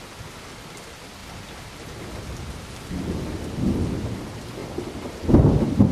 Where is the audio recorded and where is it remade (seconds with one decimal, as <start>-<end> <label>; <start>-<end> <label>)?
0.0-5.9 recorded